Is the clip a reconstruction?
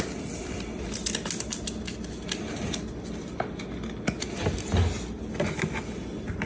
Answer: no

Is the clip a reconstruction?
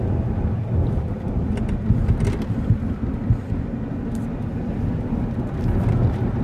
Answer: no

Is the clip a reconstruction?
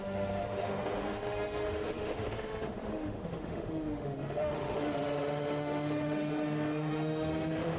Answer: yes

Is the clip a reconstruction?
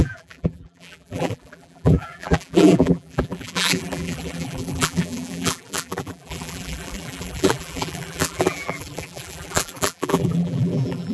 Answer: yes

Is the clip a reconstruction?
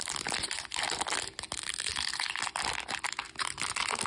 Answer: no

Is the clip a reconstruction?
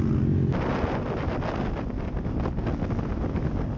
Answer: no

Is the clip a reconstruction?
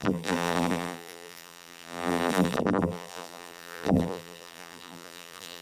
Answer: yes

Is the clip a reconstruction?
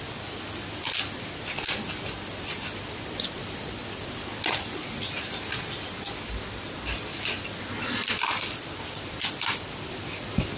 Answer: no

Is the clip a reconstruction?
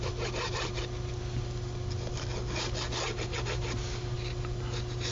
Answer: no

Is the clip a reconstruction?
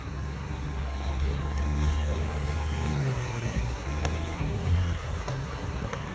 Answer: yes